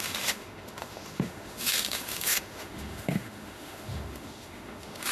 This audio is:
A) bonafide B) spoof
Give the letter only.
B